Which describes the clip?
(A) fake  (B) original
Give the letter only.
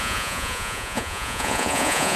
A